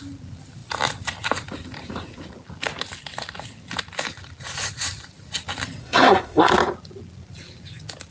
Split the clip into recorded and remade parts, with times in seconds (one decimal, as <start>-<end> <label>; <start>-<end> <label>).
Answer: 0.0-5.8 recorded; 5.8-6.5 remade; 6.5-8.1 recorded